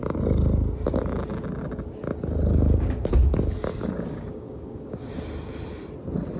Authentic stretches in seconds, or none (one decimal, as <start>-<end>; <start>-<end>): 0.0-2.5; 3.1-3.7; 5.1-6.4